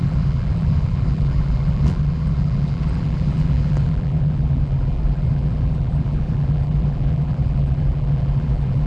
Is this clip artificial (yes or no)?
yes